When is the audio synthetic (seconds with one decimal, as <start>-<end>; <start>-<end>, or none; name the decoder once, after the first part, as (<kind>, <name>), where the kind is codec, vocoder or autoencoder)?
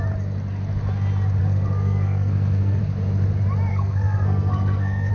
1.4-2.8 (codec, SNAC); 3.7-5.1